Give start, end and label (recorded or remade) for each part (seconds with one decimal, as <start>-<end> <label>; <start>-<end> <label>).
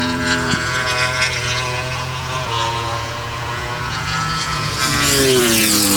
0.0-4.8 remade; 4.8-5.4 recorded; 5.4-6.0 remade